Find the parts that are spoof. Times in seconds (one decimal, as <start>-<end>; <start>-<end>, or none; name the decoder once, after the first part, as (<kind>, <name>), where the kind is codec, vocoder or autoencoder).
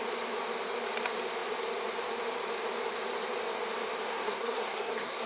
4.1-5.3 (codec, SNAC)